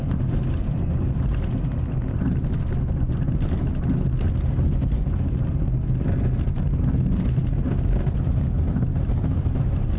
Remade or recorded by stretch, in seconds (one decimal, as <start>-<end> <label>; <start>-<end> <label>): 0.0-10.0 recorded